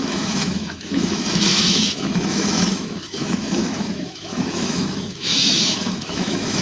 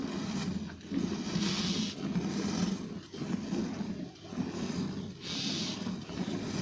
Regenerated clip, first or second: first